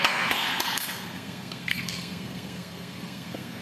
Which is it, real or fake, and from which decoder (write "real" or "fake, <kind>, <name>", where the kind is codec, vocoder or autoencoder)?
fake, codec, SNAC